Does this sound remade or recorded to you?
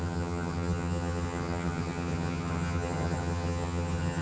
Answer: remade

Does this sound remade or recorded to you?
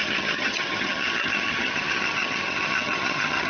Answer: remade